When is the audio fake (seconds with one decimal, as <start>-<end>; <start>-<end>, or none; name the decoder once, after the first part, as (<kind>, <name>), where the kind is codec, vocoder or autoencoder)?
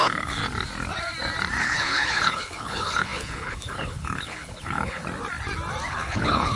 0.0-0.4 (codec, HILCodec); 1.6-5.0; 5.9-6.6